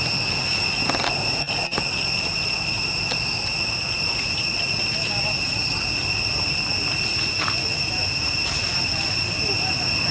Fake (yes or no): no